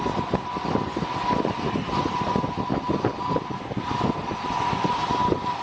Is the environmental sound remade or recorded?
recorded